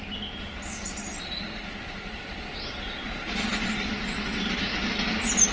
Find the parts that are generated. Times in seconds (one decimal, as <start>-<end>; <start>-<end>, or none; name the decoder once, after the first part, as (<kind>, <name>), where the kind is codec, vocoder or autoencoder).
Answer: 0.6-3.9 (vocoder, BigVGAN v2)